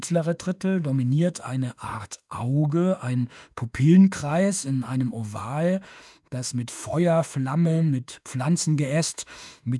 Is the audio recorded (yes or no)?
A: no